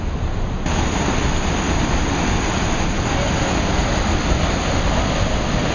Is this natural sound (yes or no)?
yes